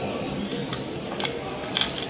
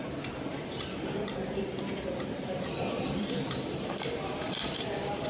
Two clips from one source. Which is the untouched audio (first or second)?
first